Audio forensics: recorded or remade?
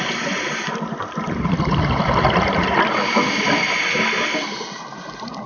recorded